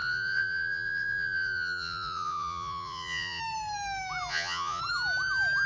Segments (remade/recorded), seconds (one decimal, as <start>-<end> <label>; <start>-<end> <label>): 0.0-3.4 remade; 3.4-4.3 recorded; 4.3-4.8 remade; 4.8-5.7 recorded

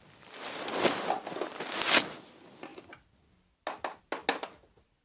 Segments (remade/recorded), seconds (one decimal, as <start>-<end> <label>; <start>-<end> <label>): 0.0-5.0 recorded

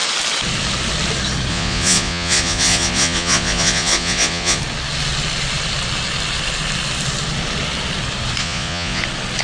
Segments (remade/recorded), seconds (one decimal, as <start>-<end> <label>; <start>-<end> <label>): 0.0-1.5 recorded; 1.5-4.6 remade; 4.6-8.4 recorded; 8.4-9.0 remade; 9.0-9.4 recorded